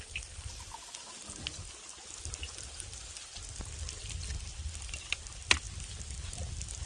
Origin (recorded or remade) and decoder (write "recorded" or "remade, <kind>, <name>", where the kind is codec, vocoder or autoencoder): recorded